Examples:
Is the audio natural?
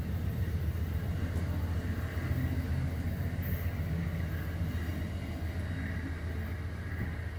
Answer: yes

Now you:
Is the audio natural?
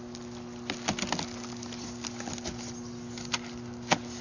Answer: yes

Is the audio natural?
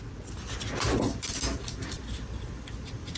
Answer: yes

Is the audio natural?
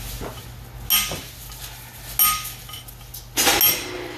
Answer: yes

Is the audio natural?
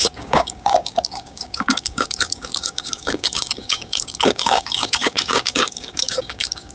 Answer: no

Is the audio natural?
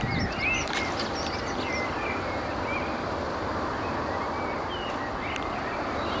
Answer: yes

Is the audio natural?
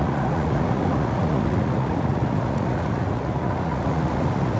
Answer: no